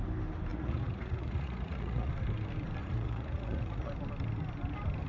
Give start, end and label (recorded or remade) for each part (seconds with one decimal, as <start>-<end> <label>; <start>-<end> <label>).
0.0-0.5 recorded; 0.5-2.1 remade; 2.1-2.8 recorded; 2.8-3.9 remade; 3.9-5.1 recorded